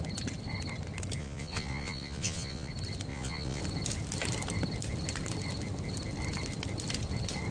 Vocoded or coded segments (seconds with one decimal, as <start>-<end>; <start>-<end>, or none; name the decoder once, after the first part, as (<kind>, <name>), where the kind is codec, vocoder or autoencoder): 1.2-2.7 (vocoder, Vocos); 3.1-3.6